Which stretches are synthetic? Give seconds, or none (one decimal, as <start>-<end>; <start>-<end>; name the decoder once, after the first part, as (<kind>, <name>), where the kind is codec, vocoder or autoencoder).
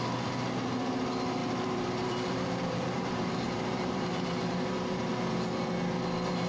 1.4-5.1 (vocoder, BigVGAN v2)